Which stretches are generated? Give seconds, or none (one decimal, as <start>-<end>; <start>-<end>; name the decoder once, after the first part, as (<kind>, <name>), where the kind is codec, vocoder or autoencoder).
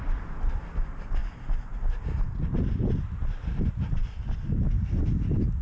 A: none